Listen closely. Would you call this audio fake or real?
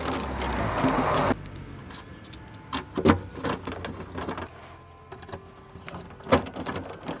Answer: real